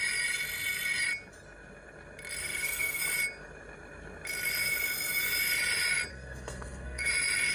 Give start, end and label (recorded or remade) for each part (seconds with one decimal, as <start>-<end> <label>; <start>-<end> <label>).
0.0-2.4 recorded; 2.4-3.0 remade; 3.0-6.1 recorded; 6.1-7.1 remade; 7.1-7.5 recorded